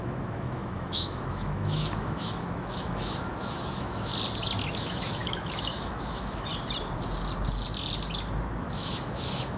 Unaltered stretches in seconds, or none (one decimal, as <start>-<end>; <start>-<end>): 4.1-4.8; 6.5-8.6